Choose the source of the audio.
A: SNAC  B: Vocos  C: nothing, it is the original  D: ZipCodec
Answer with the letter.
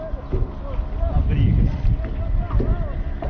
C